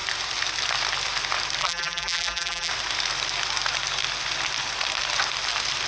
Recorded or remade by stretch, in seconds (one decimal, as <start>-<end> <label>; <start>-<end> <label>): 0.0-1.6 recorded; 1.6-2.7 remade; 2.7-5.9 recorded